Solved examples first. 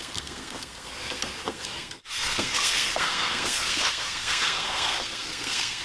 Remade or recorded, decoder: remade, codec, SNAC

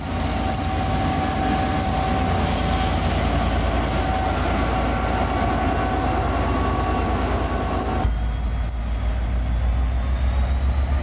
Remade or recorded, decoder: recorded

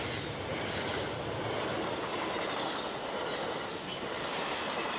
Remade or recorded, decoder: recorded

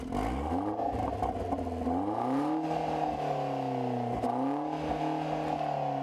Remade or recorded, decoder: recorded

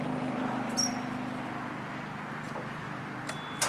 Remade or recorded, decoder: recorded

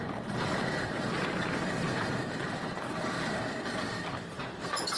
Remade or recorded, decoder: remade, vocoder, BigVGAN v2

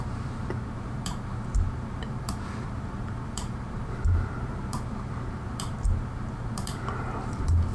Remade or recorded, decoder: remade, vocoder, BigVGAN v2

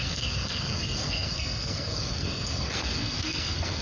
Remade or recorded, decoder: remade, codec, SNAC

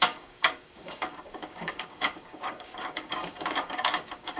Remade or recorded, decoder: remade, codec, DAC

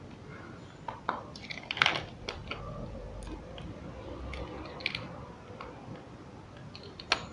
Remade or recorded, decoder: recorded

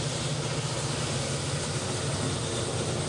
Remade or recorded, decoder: recorded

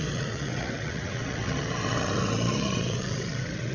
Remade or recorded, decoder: remade, vocoder, WaveNeXt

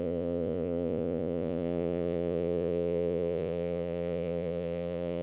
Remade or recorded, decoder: remade, vocoder, Vocos